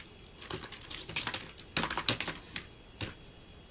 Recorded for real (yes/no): yes